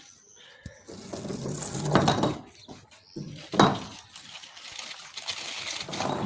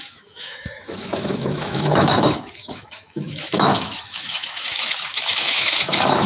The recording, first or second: first